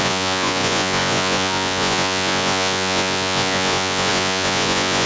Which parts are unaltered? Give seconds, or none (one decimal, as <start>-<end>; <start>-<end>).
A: none